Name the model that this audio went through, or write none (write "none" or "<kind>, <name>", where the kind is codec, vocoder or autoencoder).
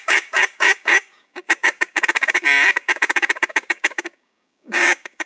codec, DAC